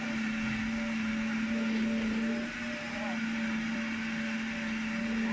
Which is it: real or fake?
real